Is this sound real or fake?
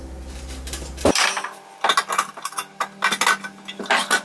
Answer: real